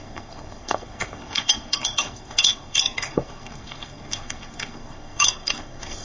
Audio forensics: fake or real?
fake